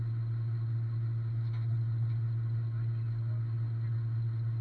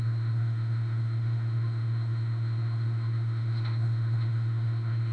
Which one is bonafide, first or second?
first